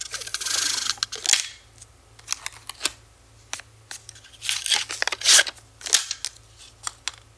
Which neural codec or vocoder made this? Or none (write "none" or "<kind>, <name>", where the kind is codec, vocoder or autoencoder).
none